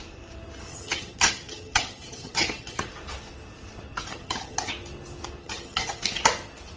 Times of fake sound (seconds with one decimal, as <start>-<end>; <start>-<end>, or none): 0.7-2.9; 4.1-4.7; 5.4-6.0